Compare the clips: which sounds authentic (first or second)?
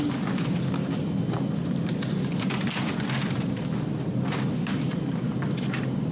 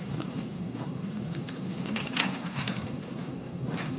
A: first